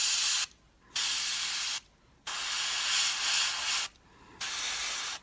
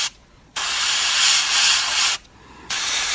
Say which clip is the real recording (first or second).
first